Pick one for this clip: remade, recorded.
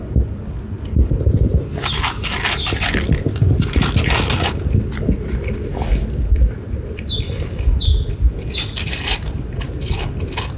recorded